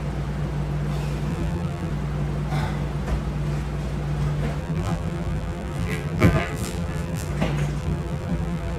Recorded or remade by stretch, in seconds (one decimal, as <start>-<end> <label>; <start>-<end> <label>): 0.0-1.3 recorded; 1.3-1.9 remade; 1.9-4.6 recorded; 4.6-7.3 remade; 7.3-7.8 recorded; 7.8-8.8 remade